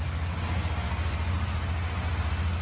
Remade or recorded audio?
recorded